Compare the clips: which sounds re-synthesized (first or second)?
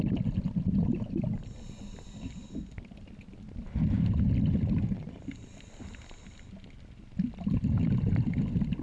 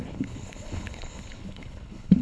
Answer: second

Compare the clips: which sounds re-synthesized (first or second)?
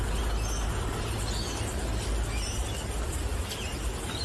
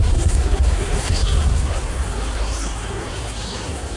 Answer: second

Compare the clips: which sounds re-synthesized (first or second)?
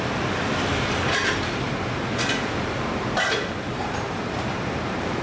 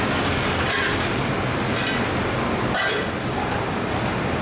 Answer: first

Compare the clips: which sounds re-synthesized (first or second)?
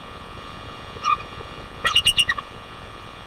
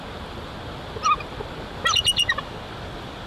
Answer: first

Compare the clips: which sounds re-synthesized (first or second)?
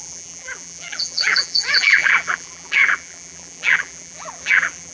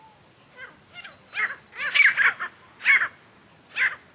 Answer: first